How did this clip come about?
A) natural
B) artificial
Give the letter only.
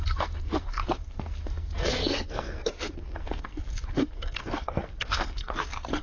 B